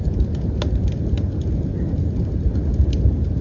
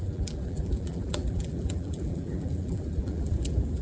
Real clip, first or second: first